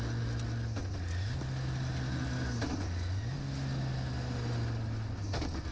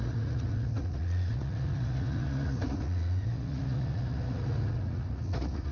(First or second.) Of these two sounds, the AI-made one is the second